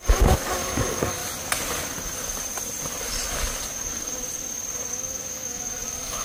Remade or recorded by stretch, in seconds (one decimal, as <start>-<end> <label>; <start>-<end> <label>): 0.0-1.2 remade; 1.2-4.9 recorded; 4.9-6.2 remade